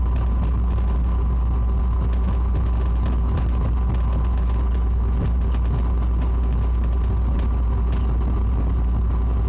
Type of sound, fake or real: real